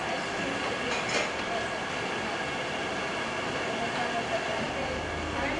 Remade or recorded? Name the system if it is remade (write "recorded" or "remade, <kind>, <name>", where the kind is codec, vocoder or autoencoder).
recorded